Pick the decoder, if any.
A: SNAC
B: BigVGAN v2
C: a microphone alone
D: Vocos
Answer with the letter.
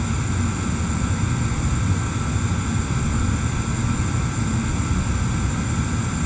C